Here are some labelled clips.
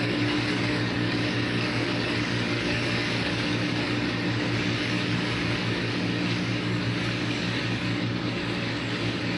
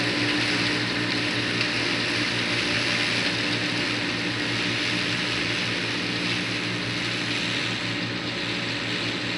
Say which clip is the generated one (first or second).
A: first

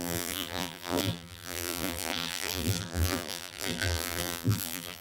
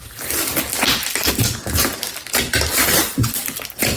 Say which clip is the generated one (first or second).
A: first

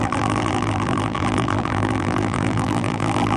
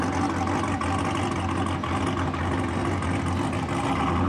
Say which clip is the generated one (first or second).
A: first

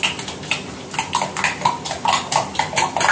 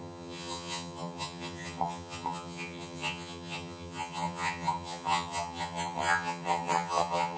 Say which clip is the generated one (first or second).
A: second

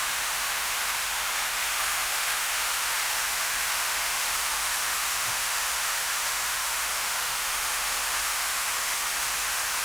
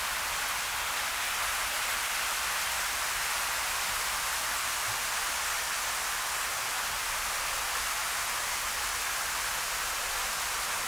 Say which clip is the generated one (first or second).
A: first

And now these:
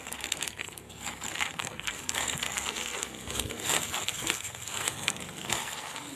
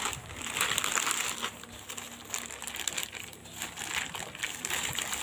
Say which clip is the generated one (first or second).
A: first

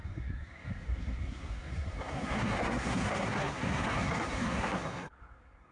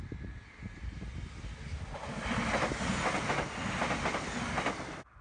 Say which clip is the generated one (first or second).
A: first